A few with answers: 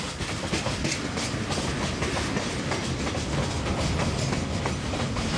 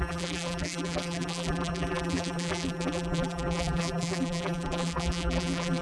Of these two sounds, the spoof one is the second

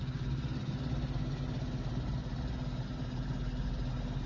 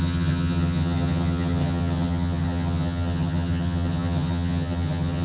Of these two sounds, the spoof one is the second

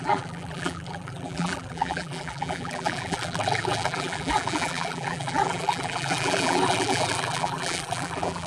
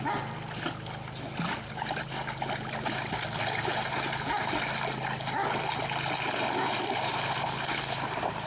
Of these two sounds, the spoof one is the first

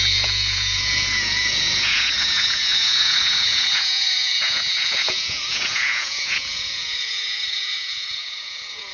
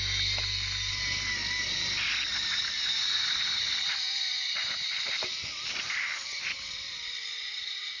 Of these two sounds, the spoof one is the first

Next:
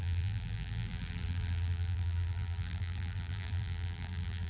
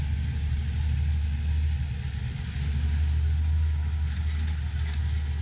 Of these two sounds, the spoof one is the first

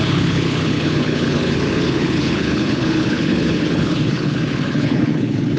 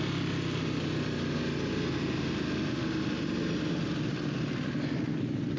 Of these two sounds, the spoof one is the first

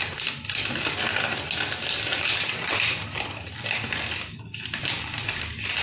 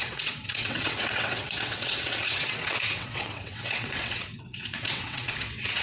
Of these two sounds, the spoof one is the second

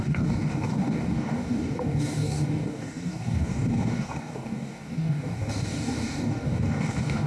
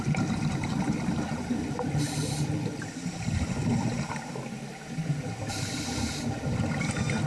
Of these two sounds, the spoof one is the first